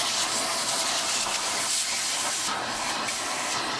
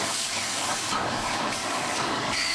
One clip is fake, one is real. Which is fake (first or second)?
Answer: second